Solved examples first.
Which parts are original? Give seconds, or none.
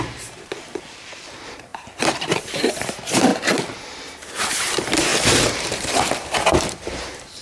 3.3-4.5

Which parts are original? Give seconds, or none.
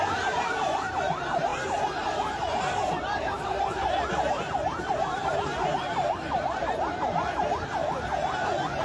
7.8-8.8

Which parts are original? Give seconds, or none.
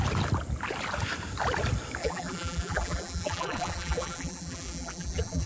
0.0-2.0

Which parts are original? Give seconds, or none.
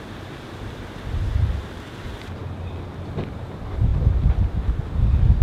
0.0-3.9; 4.8-5.4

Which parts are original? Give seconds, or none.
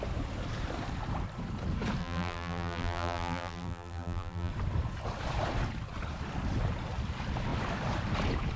0.0-2.0; 4.5-8.6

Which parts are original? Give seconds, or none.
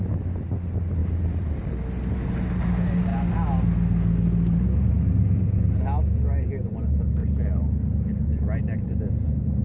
0.0-1.0; 2.1-7.2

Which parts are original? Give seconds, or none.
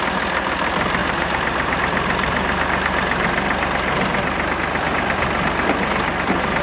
0.0-1.0; 1.8-6.6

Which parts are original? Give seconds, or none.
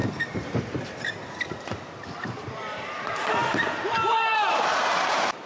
1.2-2.2